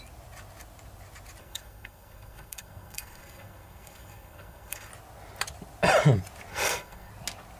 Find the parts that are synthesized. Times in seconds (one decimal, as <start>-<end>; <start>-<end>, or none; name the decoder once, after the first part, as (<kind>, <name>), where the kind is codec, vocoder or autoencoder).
1.4-4.9 (codec, SNAC); 6.5-7.1